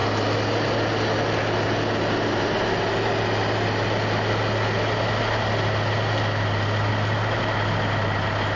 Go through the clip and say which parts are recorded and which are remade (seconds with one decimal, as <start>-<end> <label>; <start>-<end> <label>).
0.0-8.6 recorded